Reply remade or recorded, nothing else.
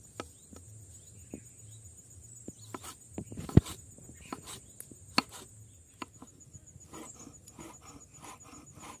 recorded